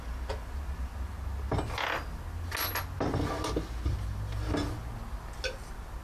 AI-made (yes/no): no